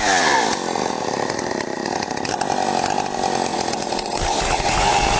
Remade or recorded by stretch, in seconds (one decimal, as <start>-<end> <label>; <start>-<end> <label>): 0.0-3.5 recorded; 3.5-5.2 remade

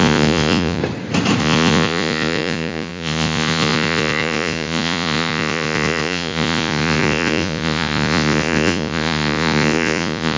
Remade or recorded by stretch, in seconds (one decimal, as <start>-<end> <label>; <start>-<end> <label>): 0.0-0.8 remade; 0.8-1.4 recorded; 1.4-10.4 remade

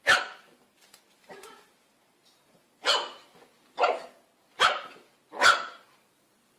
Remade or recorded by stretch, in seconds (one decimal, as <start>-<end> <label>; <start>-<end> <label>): 0.0-6.6 recorded

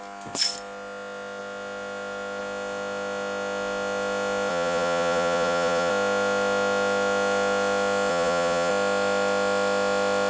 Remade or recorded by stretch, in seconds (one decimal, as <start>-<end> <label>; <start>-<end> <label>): 0.0-4.5 recorded; 4.5-5.9 remade; 5.9-8.1 recorded; 8.1-8.7 remade; 8.7-10.3 recorded